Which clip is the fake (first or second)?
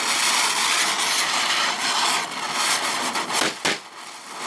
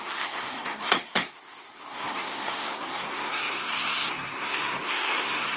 second